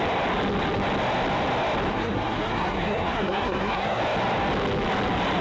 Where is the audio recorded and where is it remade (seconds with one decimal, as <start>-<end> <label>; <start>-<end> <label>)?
0.0-1.9 recorded; 1.9-4.0 remade; 4.0-5.4 recorded